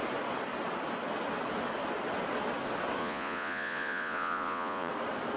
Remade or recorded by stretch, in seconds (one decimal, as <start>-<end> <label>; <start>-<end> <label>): 0.0-3.0 recorded; 3.0-4.9 remade; 4.9-5.4 recorded